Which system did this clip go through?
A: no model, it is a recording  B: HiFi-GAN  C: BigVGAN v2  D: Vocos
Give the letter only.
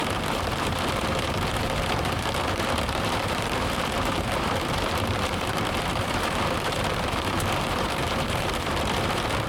C